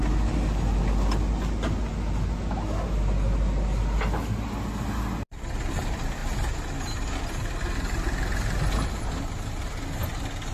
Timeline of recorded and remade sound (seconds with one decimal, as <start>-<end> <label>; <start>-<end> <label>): 0.0-10.5 recorded